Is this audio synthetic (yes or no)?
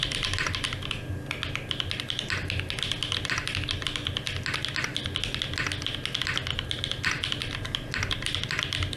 no